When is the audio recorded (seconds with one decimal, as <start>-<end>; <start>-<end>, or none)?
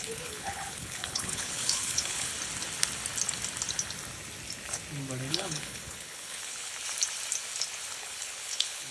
2.3-5.3; 6.7-8.0